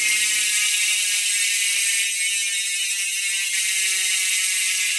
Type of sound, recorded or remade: recorded